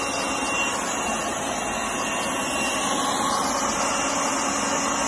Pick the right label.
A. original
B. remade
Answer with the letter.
A